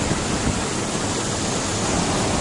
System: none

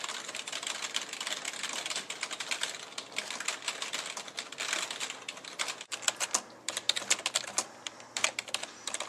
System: none